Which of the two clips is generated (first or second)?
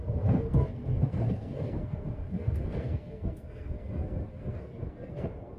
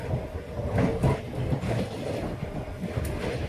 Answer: first